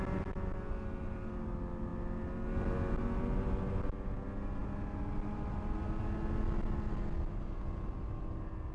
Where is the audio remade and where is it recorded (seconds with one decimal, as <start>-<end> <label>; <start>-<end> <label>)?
0.0-8.7 recorded